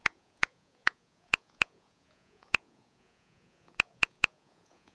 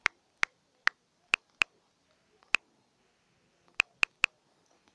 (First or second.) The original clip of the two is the second